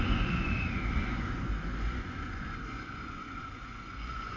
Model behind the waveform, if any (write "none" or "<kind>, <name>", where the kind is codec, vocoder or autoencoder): vocoder, Vocos